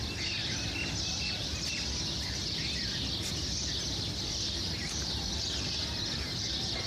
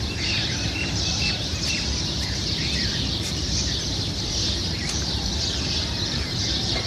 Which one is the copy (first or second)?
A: second